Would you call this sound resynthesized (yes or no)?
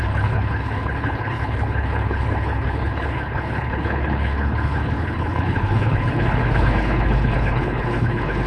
yes